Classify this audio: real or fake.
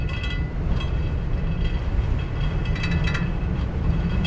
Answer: real